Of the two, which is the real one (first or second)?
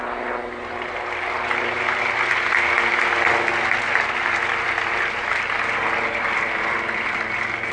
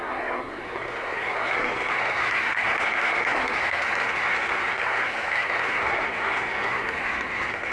first